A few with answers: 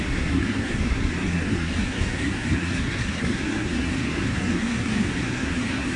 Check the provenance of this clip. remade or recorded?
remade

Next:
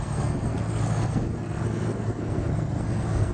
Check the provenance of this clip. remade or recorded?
remade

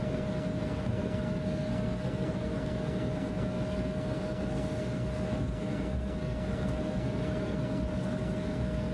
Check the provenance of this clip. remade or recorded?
remade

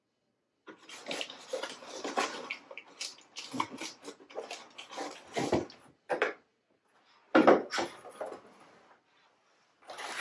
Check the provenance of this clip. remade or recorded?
recorded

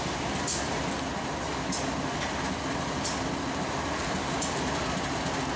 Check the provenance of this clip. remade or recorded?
recorded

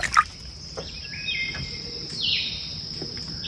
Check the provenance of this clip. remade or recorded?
recorded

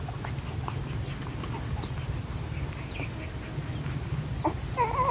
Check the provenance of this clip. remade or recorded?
recorded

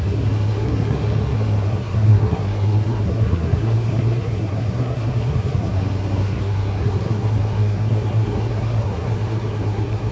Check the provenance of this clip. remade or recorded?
remade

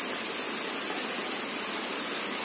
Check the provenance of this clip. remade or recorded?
recorded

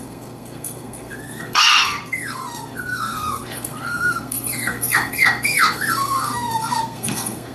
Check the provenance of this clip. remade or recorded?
remade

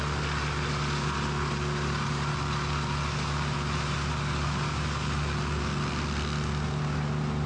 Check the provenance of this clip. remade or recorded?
recorded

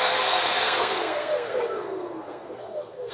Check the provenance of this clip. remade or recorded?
remade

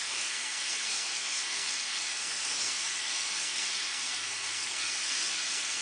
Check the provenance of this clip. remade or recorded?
remade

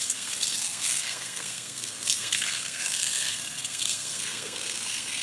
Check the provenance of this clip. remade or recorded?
remade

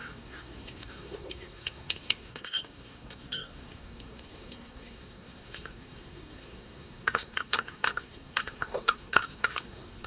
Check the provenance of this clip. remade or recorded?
remade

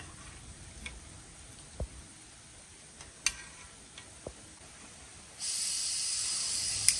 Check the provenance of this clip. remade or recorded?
recorded